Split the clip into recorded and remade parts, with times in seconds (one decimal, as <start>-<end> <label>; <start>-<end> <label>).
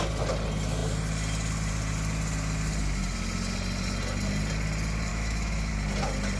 0.0-5.1 recorded; 5.1-5.7 remade; 5.7-6.4 recorded